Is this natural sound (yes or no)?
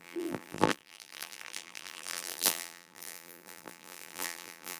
no